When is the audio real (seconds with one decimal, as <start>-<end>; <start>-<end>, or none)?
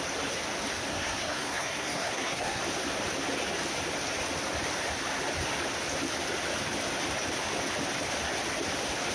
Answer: 0.0-0.9; 2.6-9.1